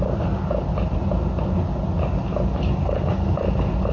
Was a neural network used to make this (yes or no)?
no